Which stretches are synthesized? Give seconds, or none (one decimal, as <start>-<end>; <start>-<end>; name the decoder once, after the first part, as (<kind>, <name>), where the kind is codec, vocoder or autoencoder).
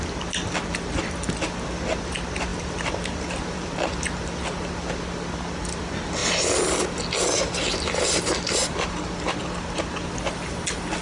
2.5-4.0 (vocoder, BigVGAN v2)